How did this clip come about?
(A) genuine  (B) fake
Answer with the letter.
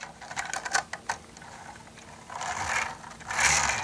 A